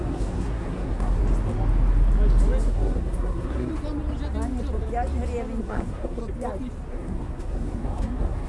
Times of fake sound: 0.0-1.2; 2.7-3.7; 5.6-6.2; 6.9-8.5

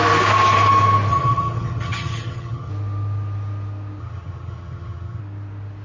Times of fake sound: 1.1-2.7; 4.0-5.2

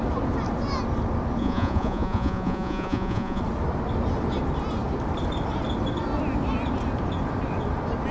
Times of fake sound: 1.4-3.4

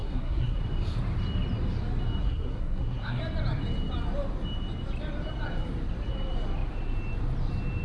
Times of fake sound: 0.0-0.6; 2.2-3.2

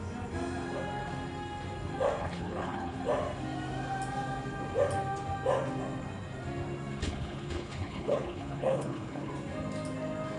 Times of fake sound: 2.2-3.0; 7.0-9.3

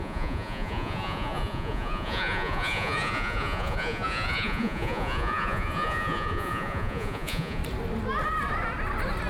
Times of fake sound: 0.0-7.6